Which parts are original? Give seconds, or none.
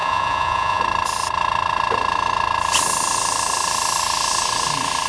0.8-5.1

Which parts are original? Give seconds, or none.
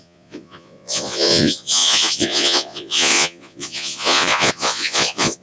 none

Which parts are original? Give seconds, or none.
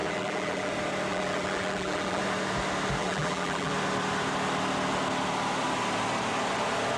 0.7-1.1; 2.2-3.0; 3.7-7.0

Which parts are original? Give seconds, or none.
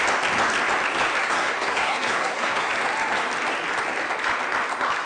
0.0-1.2; 2.7-5.1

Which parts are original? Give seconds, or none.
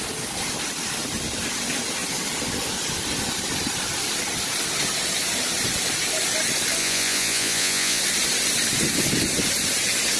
0.0-6.8; 8.0-10.2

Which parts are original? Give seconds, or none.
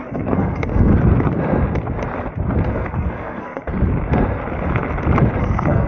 0.9-2.7; 3.7-5.4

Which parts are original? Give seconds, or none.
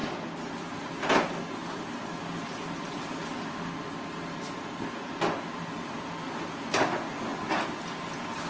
0.0-8.5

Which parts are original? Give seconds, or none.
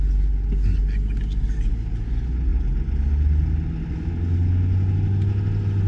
0.0-5.9